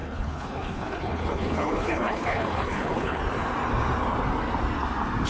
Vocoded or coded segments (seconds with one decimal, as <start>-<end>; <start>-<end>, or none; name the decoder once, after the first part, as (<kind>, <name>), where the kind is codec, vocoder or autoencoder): 0.0-3.2 (codec, HILCodec)